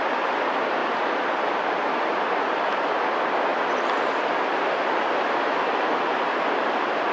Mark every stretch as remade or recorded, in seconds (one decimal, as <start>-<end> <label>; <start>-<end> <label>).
0.0-2.1 recorded; 2.1-2.7 remade; 2.7-7.1 recorded